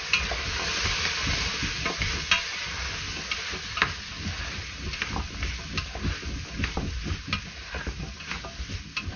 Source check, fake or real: real